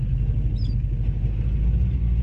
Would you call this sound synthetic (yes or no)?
no